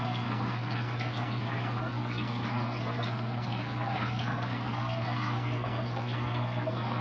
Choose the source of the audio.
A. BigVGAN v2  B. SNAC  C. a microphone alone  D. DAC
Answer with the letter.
B